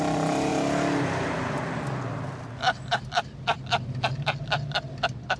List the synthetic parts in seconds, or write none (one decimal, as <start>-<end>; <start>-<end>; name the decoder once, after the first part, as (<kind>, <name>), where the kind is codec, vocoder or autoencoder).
none